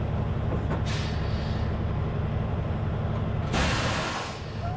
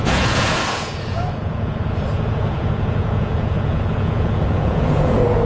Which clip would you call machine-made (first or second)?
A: second